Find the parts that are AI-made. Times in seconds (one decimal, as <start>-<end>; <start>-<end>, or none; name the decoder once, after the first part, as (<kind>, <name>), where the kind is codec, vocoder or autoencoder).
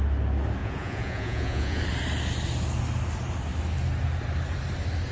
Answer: 0.6-1.8 (vocoder, Vocos)